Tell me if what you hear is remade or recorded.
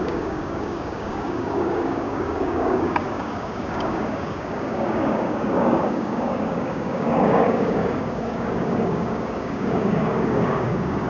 remade